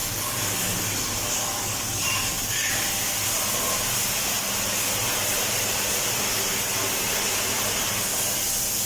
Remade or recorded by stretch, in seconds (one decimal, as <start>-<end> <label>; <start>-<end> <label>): 0.0-0.8 remade; 0.8-1.4 recorded; 1.4-2.7 remade; 2.7-8.9 recorded